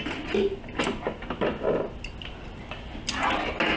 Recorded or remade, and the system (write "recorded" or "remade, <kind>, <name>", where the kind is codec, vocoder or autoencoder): recorded